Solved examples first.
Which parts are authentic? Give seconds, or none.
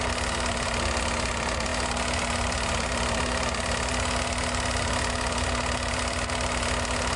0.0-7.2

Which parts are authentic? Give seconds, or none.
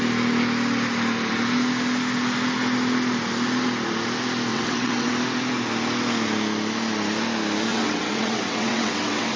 0.0-4.5; 5.1-7.7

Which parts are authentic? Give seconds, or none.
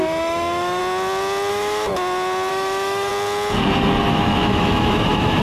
0.8-1.5; 1.9-2.5; 3.1-4.1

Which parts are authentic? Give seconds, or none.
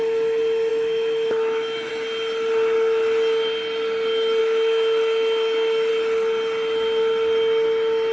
0.0-0.7; 1.9-4.4; 5.9-8.1